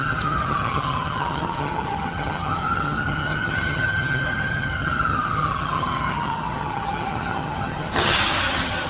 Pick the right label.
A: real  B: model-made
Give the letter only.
B